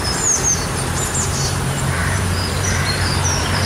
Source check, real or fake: fake